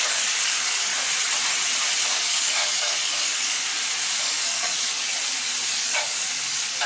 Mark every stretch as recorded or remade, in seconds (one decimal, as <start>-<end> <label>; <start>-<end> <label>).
0.0-0.9 remade; 0.9-2.1 recorded; 2.1-3.7 remade; 3.7-4.2 recorded; 4.2-5.1 remade; 5.1-5.7 recorded; 5.7-6.9 remade